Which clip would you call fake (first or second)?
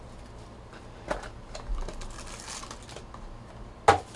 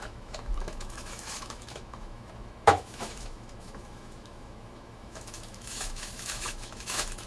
second